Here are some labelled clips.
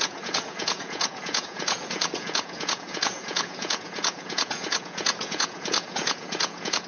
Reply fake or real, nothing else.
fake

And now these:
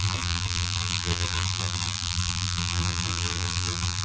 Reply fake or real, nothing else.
fake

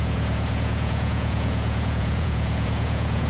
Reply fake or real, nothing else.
fake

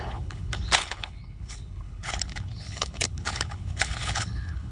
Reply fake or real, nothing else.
fake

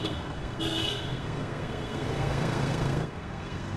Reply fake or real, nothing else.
fake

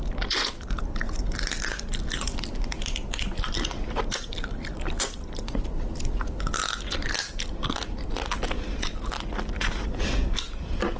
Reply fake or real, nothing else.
real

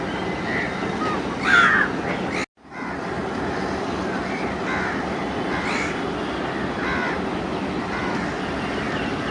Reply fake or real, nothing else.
real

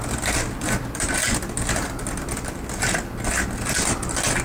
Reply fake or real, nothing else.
real